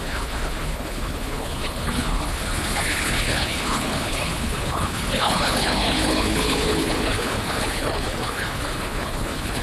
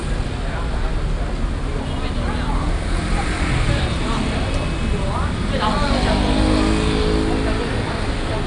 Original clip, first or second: second